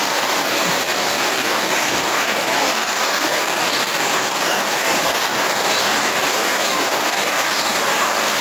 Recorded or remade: remade